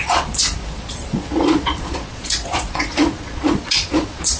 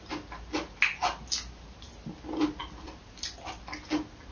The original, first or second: second